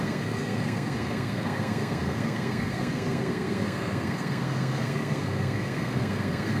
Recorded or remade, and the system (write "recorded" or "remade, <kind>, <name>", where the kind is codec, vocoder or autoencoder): remade, codec, SNAC